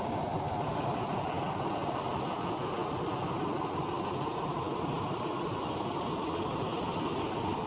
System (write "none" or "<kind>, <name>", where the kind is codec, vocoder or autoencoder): none